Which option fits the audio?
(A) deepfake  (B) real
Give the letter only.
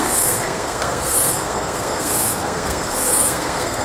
A